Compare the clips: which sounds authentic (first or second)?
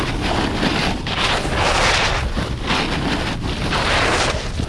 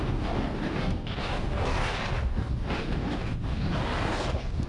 first